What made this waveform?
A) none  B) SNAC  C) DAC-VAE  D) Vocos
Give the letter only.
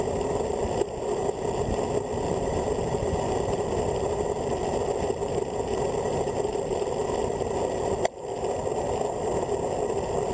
A